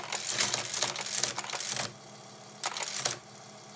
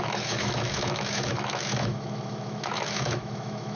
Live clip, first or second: first